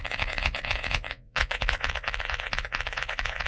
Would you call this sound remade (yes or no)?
yes